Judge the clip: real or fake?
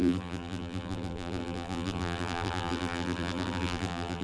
fake